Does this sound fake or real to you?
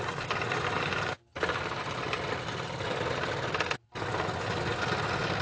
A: real